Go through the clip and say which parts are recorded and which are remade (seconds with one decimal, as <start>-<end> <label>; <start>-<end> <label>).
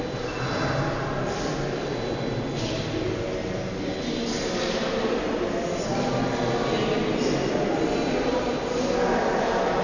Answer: 0.0-9.8 recorded